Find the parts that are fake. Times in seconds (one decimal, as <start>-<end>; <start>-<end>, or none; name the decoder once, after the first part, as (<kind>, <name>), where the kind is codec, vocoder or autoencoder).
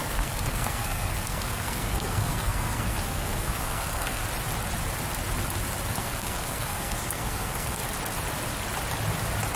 0.0-4.2 (codec, SNAC); 6.0-7.8